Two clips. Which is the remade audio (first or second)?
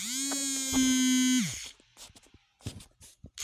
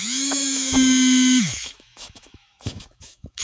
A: second